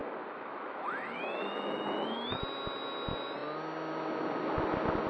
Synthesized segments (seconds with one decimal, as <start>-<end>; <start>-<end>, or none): 0.0-2.4